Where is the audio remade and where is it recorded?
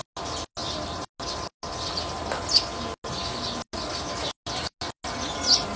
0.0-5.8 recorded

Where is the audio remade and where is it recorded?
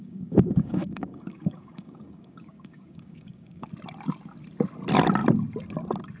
0.0-3.7 remade; 3.7-6.2 recorded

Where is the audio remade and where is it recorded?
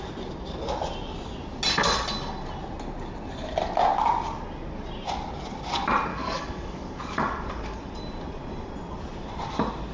0.0-6.1 recorded; 6.1-7.9 remade; 7.9-9.9 recorded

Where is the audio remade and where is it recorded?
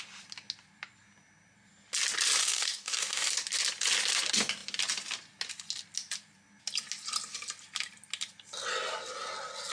0.0-2.4 recorded; 2.4-3.3 remade; 3.3-9.7 recorded